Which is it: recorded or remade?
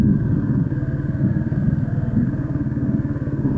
remade